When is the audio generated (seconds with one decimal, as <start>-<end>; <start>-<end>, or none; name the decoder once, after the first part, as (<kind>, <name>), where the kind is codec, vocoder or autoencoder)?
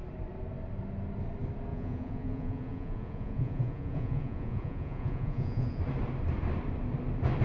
1.7-5.8 (vocoder, Vocos)